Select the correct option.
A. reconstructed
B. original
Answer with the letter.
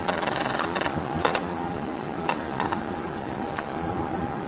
A